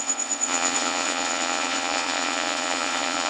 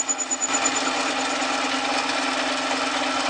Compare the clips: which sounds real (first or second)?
second